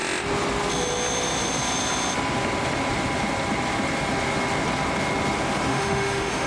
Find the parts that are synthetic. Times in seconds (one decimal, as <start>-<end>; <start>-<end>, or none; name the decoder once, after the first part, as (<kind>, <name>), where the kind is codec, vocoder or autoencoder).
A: 5.7-6.5 (autoencoder, DAC-VAE)